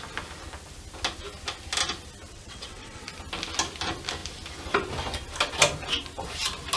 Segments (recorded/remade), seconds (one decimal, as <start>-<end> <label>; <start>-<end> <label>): 0.0-2.3 recorded; 2.3-3.0 remade; 3.0-6.8 recorded